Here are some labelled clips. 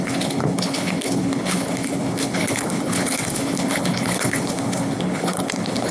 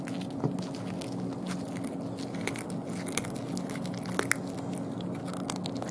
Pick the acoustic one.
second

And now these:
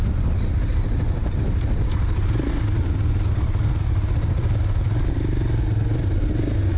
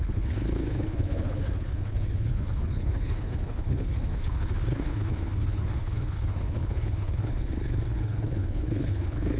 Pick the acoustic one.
first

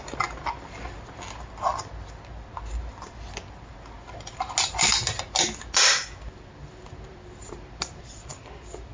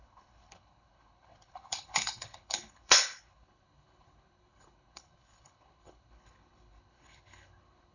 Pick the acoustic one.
first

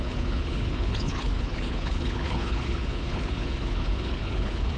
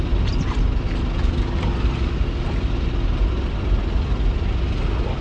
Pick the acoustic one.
second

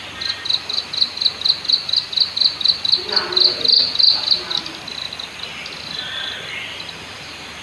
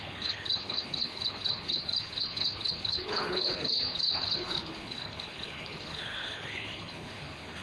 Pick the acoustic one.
first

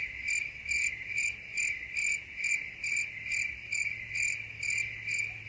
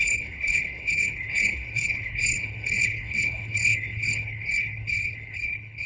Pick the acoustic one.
first